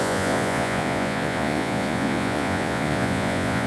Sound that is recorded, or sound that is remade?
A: remade